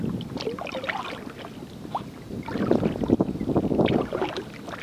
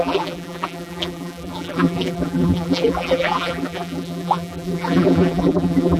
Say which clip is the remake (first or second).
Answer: second